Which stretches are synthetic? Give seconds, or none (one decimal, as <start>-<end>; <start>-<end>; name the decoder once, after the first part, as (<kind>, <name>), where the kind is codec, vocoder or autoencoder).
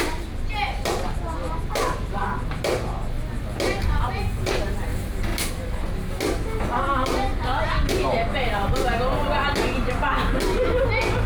4.9-5.5 (vocoder, BigVGAN v2)